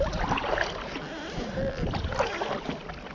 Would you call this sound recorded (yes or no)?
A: yes